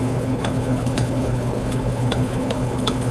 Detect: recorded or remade remade